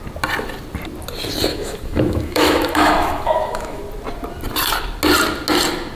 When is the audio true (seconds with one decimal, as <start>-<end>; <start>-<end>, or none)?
0.0-1.5; 3.8-5.9